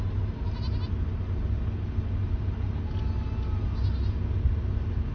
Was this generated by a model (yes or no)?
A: no